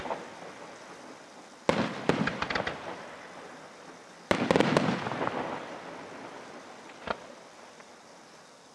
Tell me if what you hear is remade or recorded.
recorded